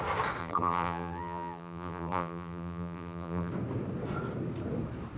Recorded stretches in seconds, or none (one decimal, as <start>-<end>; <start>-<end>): 0.0-0.4; 3.5-5.2